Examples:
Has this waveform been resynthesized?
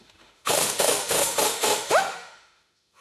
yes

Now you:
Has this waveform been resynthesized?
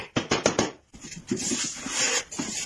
no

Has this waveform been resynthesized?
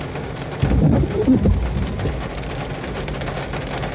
no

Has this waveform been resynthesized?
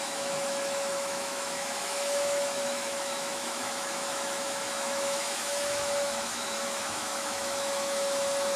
yes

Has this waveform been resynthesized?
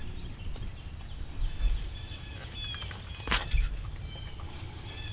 no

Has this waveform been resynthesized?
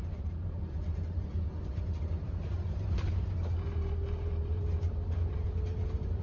yes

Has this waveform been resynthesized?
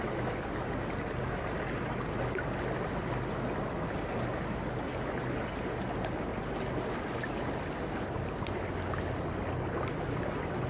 no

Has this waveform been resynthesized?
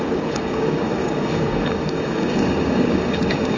yes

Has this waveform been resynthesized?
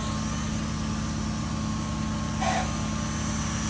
no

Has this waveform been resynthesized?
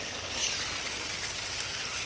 no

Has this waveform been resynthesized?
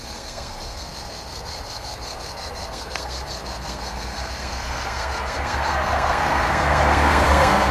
yes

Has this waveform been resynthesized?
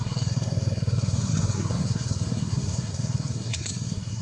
yes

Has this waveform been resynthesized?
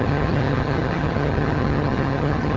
yes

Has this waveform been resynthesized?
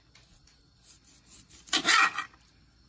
no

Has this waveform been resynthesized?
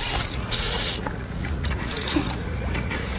yes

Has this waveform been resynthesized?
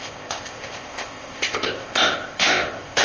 yes